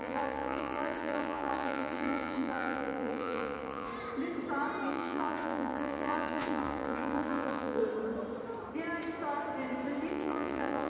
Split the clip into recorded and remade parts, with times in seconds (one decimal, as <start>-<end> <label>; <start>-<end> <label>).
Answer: 0.0-3.9 remade; 3.9-4.9 recorded; 4.9-7.8 remade; 7.8-10.1 recorded; 10.1-10.9 remade